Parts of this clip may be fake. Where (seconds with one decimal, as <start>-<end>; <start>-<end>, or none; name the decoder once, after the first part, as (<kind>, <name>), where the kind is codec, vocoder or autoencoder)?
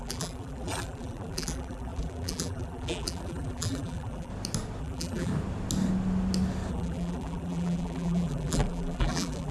0.0-4.3 (vocoder, BigVGAN v2); 4.8-5.3; 6.7-9.5